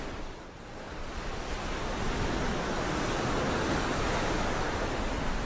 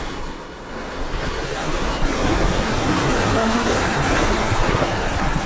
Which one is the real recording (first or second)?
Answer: first